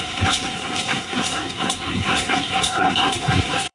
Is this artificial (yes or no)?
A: yes